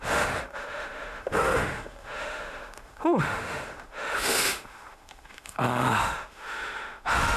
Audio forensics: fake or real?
fake